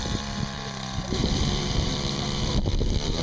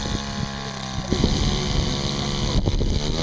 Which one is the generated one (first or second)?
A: first